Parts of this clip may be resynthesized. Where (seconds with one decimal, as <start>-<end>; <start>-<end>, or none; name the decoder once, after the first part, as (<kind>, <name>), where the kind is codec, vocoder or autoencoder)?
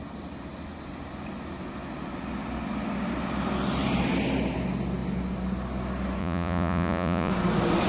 6.2-7.3 (vocoder, Vocos)